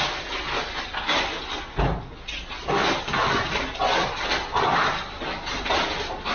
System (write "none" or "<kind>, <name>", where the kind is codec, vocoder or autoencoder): none